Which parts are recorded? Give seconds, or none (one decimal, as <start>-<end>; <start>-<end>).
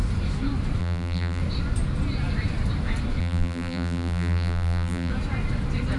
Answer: 0.0-0.8; 1.4-3.2; 5.1-6.0